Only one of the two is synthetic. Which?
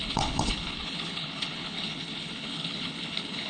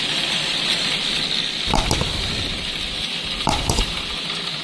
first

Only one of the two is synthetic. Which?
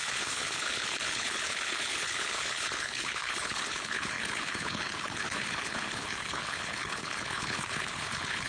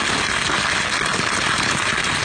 first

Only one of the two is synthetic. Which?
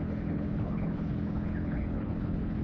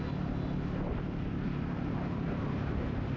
first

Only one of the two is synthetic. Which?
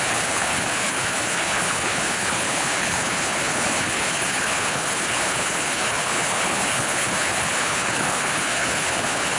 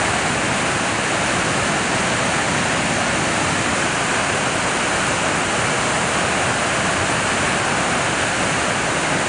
first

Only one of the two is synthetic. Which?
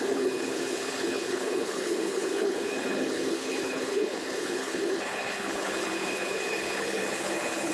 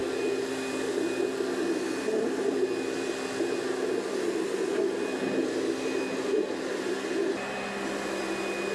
first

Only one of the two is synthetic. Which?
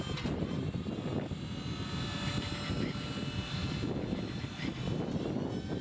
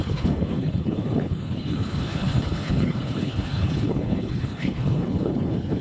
second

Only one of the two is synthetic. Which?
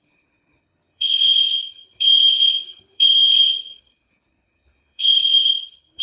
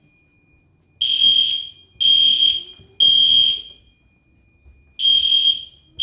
first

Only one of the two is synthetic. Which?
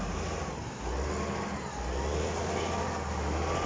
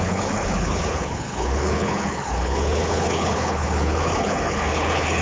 second